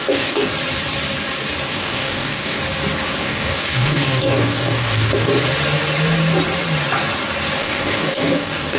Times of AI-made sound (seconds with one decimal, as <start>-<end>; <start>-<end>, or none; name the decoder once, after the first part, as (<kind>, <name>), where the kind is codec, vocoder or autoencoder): 0.0-0.5 (codec, DAC); 1.7-2.6; 3.2-5.3; 7.6-8.8